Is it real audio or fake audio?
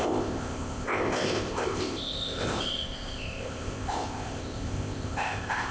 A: fake